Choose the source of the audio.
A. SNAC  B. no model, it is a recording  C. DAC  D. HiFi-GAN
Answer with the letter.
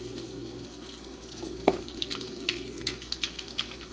A